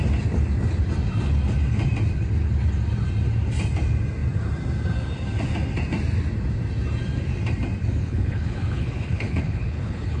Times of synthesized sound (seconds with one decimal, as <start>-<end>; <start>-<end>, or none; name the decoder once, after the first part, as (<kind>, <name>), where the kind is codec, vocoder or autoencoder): 8.0-10.2 (codec, HILCodec)